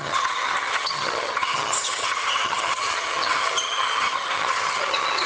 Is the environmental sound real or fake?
fake